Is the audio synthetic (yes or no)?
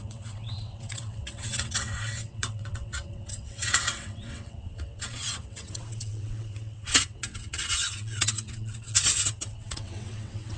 yes